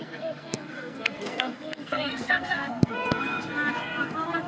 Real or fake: fake